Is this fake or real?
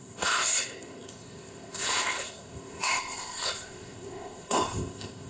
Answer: fake